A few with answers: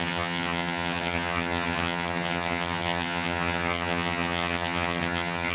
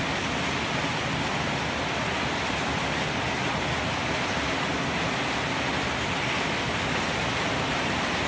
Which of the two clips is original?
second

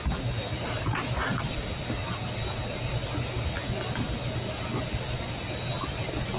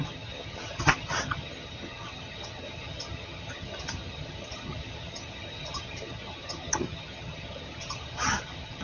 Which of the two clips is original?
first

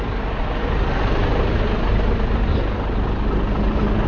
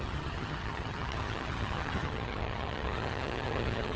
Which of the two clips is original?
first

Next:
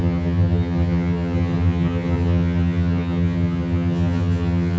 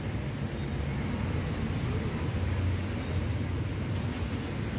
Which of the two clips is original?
second